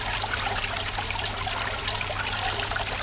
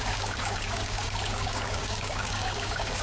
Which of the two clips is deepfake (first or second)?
second